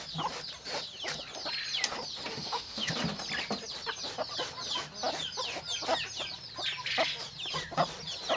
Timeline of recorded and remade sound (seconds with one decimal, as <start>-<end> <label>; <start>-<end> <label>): 0.0-2.3 recorded; 2.3-2.9 remade; 2.9-8.4 recorded